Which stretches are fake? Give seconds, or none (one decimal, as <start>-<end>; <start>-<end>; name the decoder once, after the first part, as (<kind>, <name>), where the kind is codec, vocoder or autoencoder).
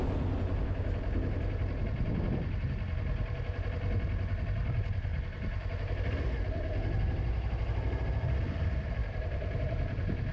5.1-6.0 (vocoder, BigVGAN v2)